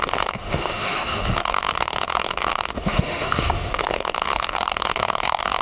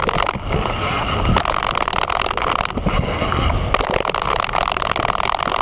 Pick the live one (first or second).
second